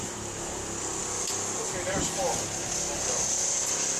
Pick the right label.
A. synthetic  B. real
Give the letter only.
A